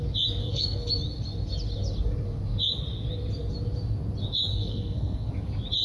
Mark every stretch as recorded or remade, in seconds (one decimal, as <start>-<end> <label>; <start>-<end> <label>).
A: 0.0-0.4 recorded; 0.4-0.9 remade; 0.9-4.5 recorded; 4.5-5.3 remade; 5.3-5.8 recorded